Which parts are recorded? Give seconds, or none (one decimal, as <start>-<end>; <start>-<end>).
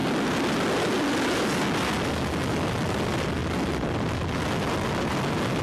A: 0.0-5.6